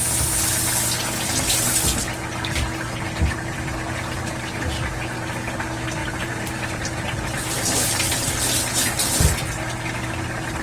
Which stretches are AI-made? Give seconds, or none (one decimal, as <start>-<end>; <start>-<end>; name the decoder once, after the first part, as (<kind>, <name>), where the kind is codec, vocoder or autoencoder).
6.0-9.5 (vocoder, BigVGAN v2)